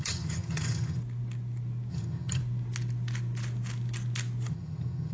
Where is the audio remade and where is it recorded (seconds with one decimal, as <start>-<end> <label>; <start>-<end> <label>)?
0.0-1.0 remade; 1.0-1.9 recorded; 1.9-2.4 remade; 2.4-4.5 recorded; 4.5-5.1 remade